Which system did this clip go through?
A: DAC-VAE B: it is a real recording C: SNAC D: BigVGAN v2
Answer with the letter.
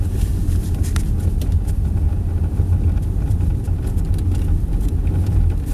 B